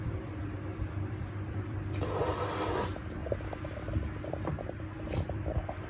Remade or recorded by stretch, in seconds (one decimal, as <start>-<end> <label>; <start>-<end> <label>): 0.0-3.2 remade; 3.2-4.2 recorded; 4.2-5.9 remade

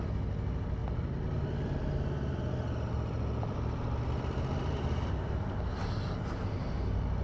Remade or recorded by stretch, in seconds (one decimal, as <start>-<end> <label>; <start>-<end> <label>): 0.0-5.7 recorded; 5.7-6.4 remade; 6.4-7.2 recorded

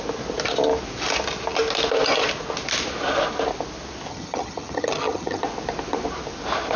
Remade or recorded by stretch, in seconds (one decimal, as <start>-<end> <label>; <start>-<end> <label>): 0.0-4.1 recorded; 4.1-5.4 remade; 5.4-6.8 recorded

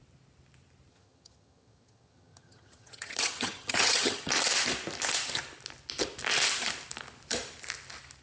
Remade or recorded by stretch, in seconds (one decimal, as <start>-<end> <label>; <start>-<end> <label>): 0.0-0.9 recorded; 0.9-4.3 remade; 4.3-8.2 recorded

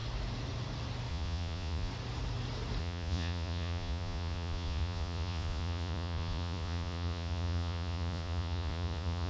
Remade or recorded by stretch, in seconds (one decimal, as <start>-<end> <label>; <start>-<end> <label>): 0.0-1.1 recorded; 1.1-1.9 remade; 1.9-2.8 recorded; 2.8-9.3 remade

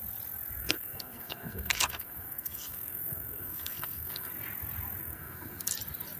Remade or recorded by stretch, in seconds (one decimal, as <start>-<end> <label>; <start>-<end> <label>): 0.0-0.6 recorded; 0.6-4.3 remade; 4.3-5.0 recorded; 5.0-5.7 remade; 5.7-6.2 recorded